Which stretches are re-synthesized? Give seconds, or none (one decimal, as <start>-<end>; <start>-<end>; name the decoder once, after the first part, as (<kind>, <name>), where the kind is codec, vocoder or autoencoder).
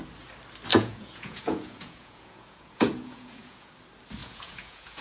0.7-3.7 (vocoder, Vocos); 4.2-5.0